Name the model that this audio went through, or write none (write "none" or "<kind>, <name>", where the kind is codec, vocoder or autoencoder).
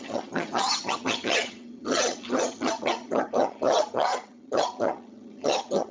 vocoder, HiFi-GAN